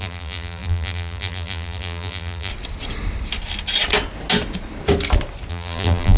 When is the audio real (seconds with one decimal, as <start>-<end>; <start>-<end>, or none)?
2.5-5.5